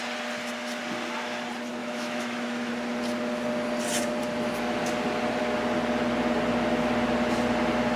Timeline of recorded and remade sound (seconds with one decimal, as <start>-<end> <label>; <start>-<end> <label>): 0.0-1.8 recorded; 1.8-2.7 remade; 2.7-8.0 recorded